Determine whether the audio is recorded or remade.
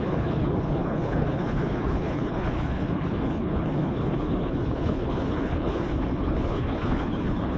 remade